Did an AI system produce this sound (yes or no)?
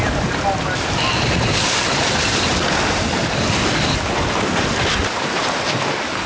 no